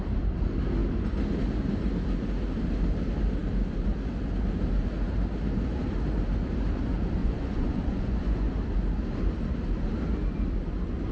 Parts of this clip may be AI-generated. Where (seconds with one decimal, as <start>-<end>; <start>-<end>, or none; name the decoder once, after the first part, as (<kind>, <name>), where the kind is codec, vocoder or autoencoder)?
7.2-8.5 (vocoder, Vocos)